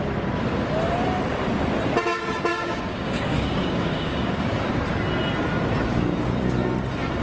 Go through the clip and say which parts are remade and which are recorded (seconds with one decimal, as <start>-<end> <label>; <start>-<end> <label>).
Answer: 0.0-2.5 recorded; 2.5-4.6 remade; 4.6-7.2 recorded